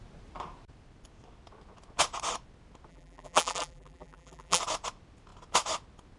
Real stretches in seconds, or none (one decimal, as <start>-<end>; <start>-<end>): 0.0-2.9; 4.6-6.2